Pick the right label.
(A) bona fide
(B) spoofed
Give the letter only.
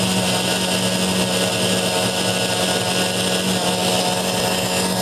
A